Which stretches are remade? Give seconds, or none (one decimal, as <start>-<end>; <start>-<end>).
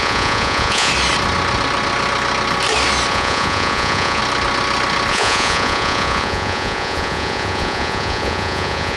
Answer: 0.0-0.9; 3.1-4.2; 5.1-9.0